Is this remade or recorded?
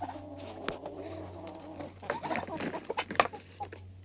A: recorded